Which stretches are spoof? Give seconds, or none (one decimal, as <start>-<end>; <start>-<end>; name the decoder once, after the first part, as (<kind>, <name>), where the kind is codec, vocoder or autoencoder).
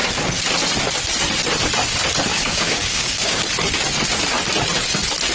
2.3-3.4 (codec, DAC)